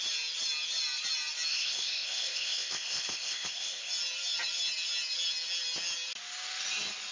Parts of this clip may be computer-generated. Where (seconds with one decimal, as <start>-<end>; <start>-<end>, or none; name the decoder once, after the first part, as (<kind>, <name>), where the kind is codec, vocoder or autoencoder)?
1.5-3.9 (codec, ZipCodec)